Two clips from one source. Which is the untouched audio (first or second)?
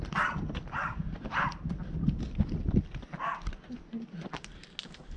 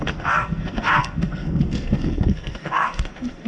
first